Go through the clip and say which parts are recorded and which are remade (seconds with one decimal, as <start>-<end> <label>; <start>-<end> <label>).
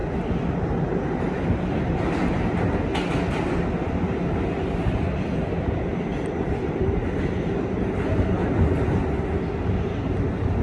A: 0.0-10.6 recorded